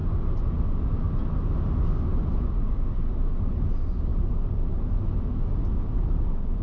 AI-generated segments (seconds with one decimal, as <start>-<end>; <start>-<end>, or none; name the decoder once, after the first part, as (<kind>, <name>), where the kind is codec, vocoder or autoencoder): none